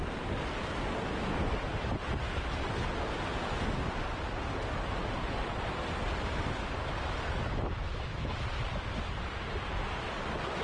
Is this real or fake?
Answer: real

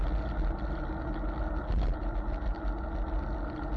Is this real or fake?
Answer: real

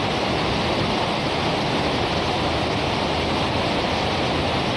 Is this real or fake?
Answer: fake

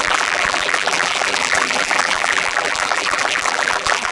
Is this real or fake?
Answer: fake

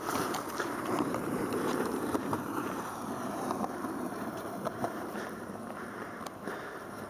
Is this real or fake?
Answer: fake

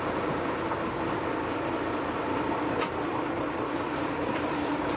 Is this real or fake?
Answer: fake